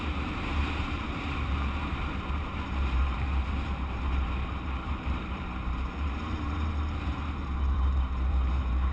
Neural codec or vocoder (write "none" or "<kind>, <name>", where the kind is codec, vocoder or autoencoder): vocoder, BigVGAN v2